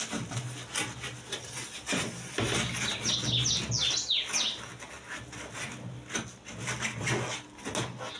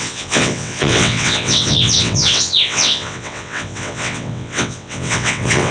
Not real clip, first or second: second